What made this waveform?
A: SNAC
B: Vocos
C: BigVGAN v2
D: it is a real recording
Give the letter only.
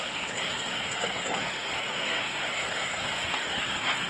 A